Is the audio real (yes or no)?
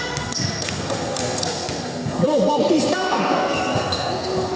no